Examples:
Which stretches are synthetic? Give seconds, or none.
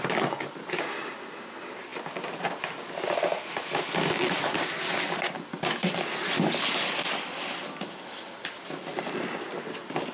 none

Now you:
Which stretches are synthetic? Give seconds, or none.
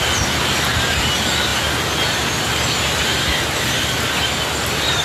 none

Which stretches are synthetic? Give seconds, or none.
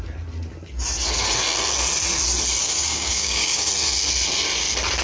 2.6-3.7 (codec, DAC)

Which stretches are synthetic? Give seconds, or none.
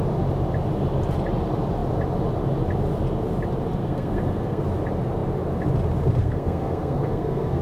3.8-4.6 (codec, SNAC); 6.2-7.6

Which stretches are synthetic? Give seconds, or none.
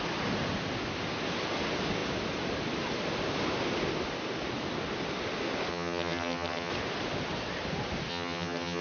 5.7-6.7 (vocoder, HiFi-GAN); 8.1-8.8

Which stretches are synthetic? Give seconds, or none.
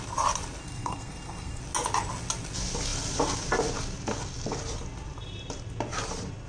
0.6-1.6 (codec, SNAC)